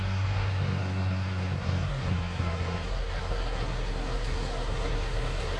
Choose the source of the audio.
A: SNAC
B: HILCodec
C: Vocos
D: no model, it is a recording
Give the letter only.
A